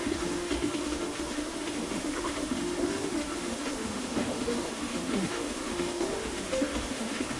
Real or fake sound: fake